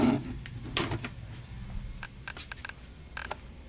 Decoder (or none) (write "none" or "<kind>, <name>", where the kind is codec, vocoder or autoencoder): none